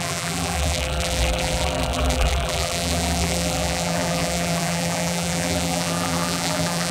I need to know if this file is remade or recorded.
remade